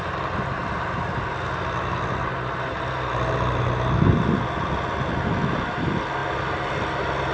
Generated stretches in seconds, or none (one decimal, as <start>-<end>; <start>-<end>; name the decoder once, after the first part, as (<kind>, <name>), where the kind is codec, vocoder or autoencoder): none